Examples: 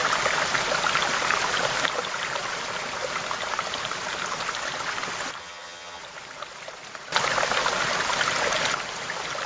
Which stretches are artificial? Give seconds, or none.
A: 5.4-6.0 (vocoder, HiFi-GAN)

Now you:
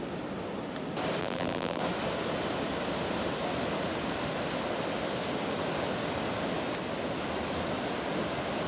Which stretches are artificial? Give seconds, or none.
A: 1.2-1.8 (vocoder, BigVGAN v2)

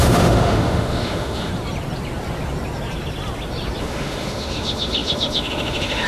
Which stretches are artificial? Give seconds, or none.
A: 0.0-1.5 (autoencoder, DAC-VAE); 3.8-6.1

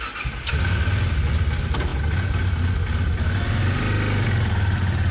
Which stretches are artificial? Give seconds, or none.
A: none

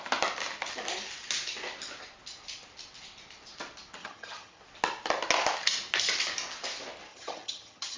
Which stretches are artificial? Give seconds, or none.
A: 4.0-4.6 (vocoder, HiFi-GAN); 7.1-8.0

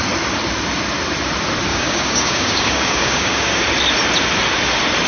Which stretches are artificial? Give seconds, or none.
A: 1.7-3.6 (codec, DAC)

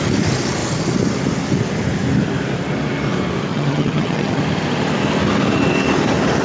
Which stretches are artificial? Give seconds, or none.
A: 3.5-4.4 (vocoder, HiFi-GAN)

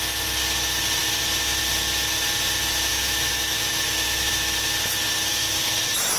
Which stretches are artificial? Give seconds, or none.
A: 2.9-4.3 (autoencoder, DAC-VAE)